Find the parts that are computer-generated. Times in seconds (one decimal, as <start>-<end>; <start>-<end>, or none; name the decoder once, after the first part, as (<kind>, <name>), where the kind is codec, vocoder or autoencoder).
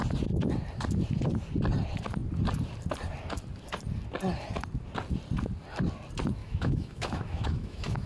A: 6.4-8.1 (autoencoder, DAC-VAE)